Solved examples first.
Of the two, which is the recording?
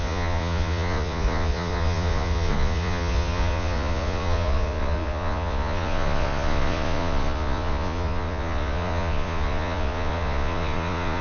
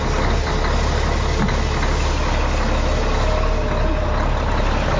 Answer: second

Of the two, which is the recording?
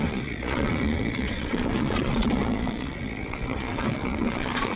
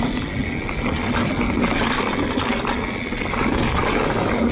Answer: second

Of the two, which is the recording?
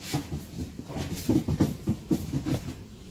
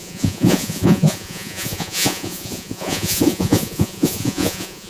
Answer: first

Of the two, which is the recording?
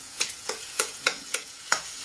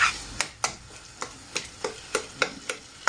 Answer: second